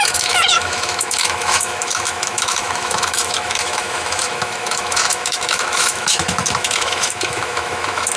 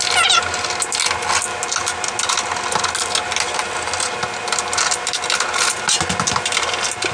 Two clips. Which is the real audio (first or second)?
second